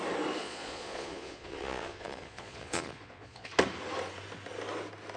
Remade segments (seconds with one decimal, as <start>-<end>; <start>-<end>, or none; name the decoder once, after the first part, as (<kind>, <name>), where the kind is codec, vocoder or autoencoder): 0.4-3.5 (vocoder, Vocos)

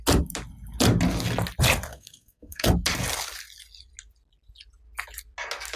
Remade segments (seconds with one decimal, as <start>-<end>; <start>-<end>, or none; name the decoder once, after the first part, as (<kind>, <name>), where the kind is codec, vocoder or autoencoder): 1.9-2.7 (codec, SNAC)